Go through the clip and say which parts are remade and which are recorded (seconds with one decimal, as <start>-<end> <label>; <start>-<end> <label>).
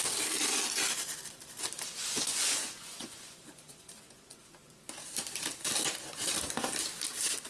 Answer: 0.0-2.0 recorded; 2.0-4.7 remade; 4.7-7.5 recorded